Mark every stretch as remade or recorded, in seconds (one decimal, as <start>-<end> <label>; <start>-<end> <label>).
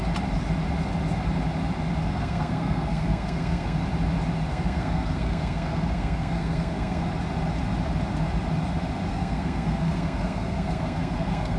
0.0-2.0 recorded; 2.0-3.8 remade; 3.8-4.5 recorded; 4.5-7.0 remade; 7.0-9.1 recorded; 9.1-11.6 remade